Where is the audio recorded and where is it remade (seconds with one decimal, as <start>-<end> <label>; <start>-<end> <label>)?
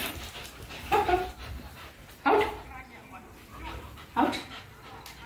0.0-3.2 remade; 3.2-5.3 recorded